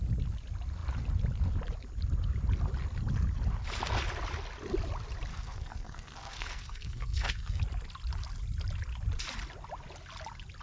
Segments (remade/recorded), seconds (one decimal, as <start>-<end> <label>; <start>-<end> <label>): 0.0-5.3 recorded; 5.3-7.6 remade; 7.6-10.6 recorded